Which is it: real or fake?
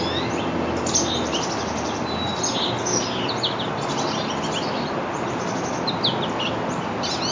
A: real